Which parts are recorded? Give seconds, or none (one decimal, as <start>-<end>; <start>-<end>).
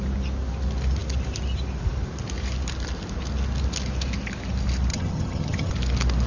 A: 0.0-4.9; 5.7-6.3